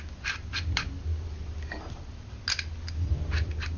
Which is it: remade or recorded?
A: recorded